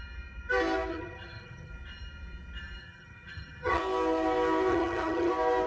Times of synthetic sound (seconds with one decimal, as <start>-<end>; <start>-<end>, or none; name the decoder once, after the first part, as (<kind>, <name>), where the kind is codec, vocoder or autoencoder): 0.9-1.7 (vocoder, HiFi-GAN); 2.8-3.8; 4.7-5.3